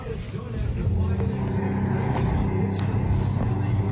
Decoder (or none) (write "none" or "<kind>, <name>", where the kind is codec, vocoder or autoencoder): none